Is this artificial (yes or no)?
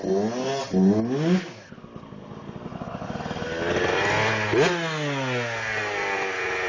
no